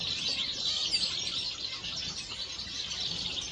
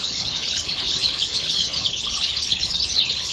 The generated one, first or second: second